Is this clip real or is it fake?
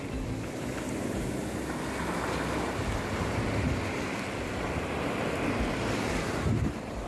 real